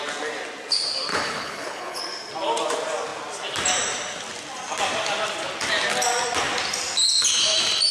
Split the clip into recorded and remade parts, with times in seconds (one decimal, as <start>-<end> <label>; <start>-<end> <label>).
0.0-1.1 recorded; 1.1-2.0 remade; 2.0-7.9 recorded